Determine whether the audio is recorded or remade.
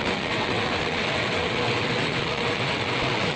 remade